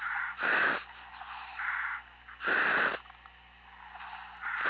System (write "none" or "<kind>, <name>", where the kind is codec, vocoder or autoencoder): none